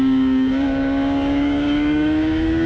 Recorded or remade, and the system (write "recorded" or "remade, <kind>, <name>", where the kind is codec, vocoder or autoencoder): remade, codec, DAC